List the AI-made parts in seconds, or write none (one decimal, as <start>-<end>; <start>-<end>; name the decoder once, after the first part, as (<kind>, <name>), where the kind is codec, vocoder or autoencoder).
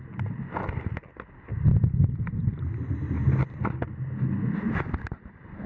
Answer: none